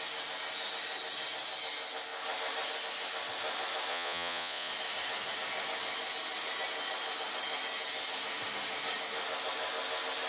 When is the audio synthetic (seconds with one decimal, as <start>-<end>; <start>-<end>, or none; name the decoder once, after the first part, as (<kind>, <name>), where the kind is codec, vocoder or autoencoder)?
3.9-4.7 (vocoder, Vocos)